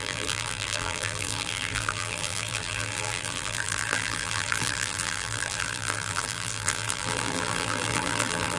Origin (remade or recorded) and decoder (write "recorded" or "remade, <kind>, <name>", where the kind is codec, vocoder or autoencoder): remade, vocoder, BigVGAN v2